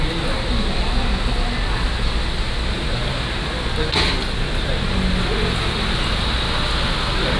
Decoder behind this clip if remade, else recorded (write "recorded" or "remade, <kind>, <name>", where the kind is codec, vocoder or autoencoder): recorded